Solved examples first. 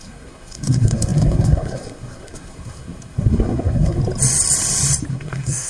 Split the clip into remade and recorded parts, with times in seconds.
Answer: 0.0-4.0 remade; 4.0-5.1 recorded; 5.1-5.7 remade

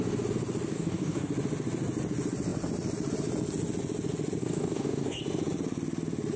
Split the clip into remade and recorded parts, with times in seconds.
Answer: 0.0-0.7 recorded; 0.7-1.3 remade; 1.3-4.4 recorded; 4.4-5.2 remade; 5.2-6.4 recorded